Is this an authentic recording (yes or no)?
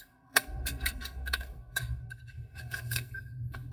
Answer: no